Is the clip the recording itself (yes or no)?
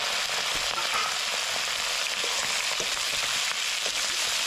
yes